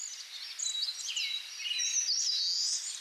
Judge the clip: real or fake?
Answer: real